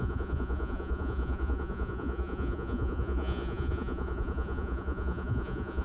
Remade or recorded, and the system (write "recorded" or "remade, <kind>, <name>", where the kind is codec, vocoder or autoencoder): remade, vocoder, Vocos